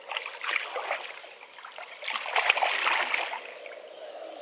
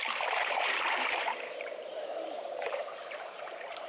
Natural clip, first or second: first